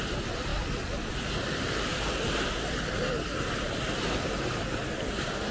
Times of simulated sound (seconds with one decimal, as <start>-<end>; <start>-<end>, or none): none